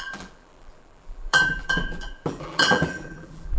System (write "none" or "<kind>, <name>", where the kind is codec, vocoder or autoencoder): vocoder, BigVGAN v2